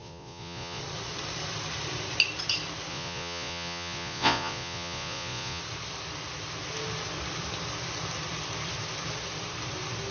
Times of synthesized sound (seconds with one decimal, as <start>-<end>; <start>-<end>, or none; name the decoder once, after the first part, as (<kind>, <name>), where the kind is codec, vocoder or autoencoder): 0.0-0.8 (vocoder, Vocos); 2.9-5.6